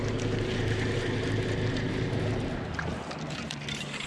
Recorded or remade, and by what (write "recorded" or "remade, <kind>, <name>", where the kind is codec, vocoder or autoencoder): recorded